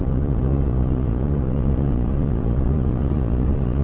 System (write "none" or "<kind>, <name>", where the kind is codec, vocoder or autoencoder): vocoder, Vocos